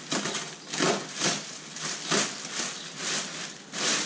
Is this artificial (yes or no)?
no